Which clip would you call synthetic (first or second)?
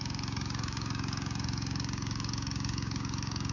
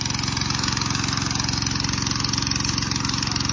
first